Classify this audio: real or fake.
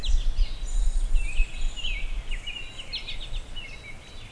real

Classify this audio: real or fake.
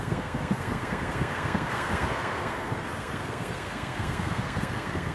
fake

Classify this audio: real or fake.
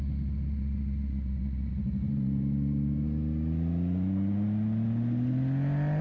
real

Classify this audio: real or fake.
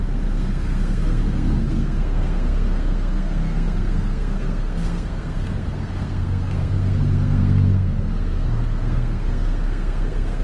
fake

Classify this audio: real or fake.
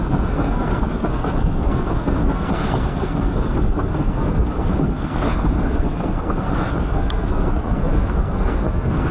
fake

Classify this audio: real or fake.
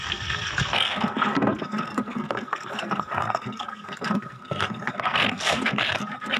fake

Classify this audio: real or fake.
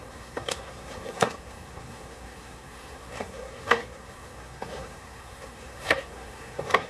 fake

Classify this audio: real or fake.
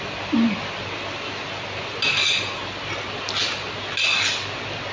real